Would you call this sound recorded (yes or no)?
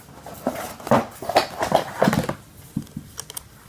yes